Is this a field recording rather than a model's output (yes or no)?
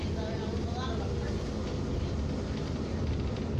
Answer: yes